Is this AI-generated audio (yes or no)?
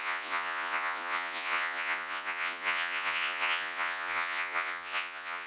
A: yes